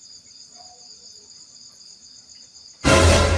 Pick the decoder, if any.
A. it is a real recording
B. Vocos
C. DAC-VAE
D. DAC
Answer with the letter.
A